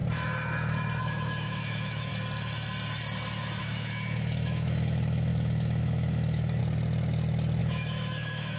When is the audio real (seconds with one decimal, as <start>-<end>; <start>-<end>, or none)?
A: 0.0-1.0; 2.1-3.6; 6.6-7.6